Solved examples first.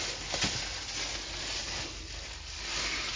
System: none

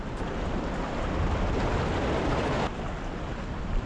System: none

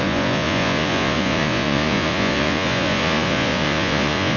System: vocoder, Vocos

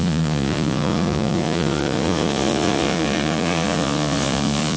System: vocoder, Vocos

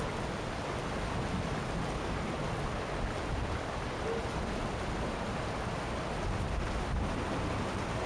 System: none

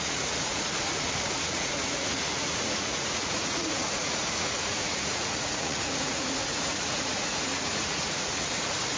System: vocoder, Vocos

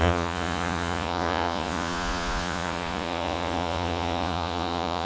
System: vocoder, Vocos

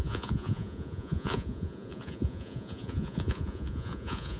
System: vocoder, Vocos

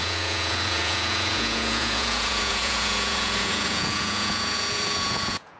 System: vocoder, Vocos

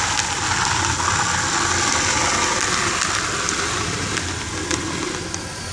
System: none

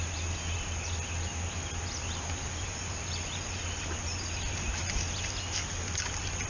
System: none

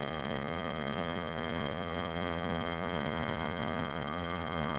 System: vocoder, Vocos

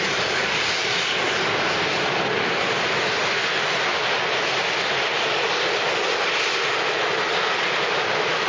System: none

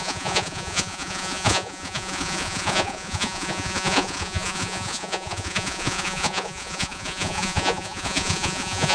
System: vocoder, Vocos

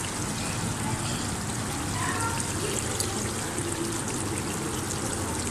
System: none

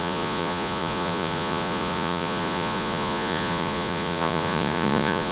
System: vocoder, Vocos